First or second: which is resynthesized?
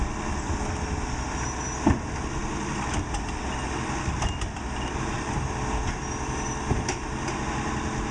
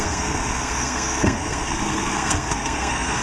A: second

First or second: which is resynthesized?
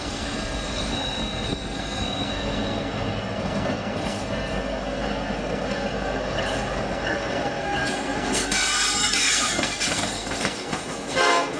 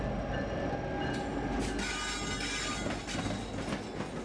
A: first